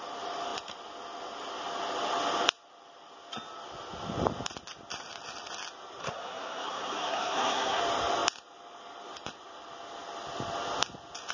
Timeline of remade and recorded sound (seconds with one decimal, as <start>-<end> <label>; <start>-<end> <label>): 0.0-6.0 recorded; 6.0-7.8 remade; 7.8-11.3 recorded